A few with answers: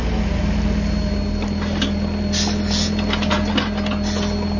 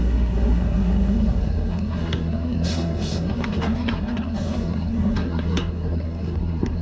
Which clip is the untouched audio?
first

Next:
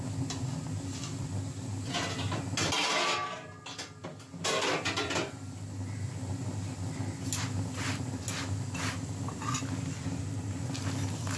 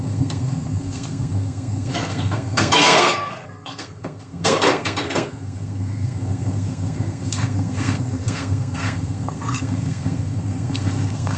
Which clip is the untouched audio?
first